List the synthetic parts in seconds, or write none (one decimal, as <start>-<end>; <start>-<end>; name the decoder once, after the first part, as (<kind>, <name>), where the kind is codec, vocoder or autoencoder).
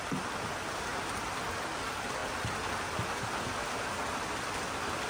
none